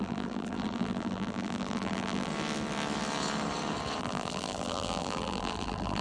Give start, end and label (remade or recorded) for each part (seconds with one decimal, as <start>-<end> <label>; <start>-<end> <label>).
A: 0.0-2.3 remade; 2.3-4.0 recorded; 4.0-6.0 remade